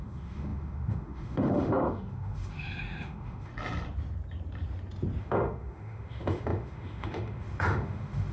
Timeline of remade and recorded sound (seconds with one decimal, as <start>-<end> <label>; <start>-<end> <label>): 0.0-3.5 remade; 3.5-5.2 recorded; 5.2-8.3 remade